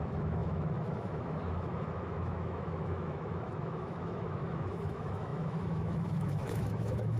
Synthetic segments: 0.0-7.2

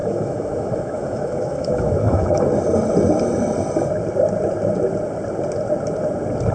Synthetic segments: 0.0-2.5

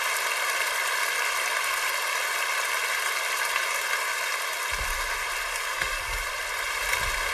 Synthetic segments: 5.5-6.2

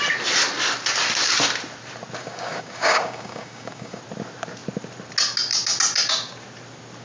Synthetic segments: 2.2-4.0